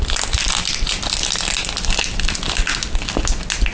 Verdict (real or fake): real